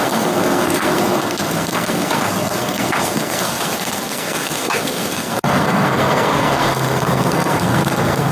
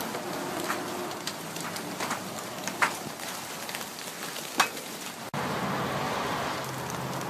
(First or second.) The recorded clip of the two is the second